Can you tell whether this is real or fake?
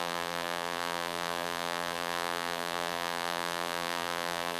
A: fake